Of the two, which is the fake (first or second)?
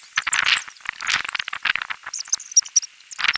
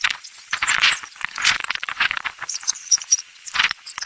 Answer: second